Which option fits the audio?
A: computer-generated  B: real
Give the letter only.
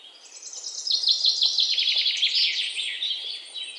B